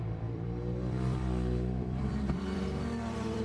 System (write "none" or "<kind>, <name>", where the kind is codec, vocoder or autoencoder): vocoder, BigVGAN v2